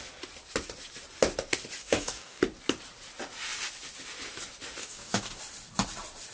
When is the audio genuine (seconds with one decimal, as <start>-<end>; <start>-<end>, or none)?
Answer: 0.0-1.8; 2.4-4.8; 5.4-6.3